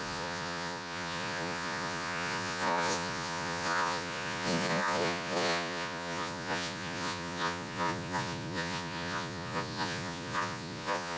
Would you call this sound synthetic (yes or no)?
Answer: yes